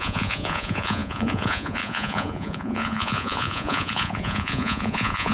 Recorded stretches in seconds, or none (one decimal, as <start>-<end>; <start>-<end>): none